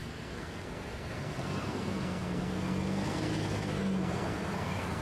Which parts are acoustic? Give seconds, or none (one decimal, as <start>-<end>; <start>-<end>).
none